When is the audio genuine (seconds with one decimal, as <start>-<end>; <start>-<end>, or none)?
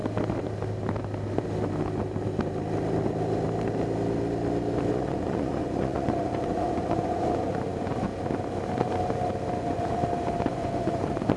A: 0.0-4.9; 8.1-9.6; 10.0-10.5